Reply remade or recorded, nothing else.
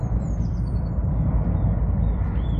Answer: remade